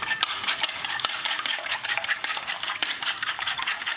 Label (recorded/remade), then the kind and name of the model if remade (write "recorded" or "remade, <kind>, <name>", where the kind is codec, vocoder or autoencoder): remade, codec, DAC